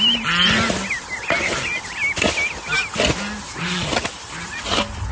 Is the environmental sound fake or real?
real